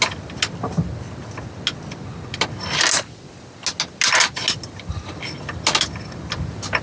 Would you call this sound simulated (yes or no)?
no